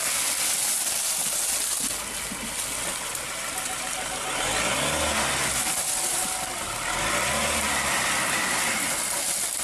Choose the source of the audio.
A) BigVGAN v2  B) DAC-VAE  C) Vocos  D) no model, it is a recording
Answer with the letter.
D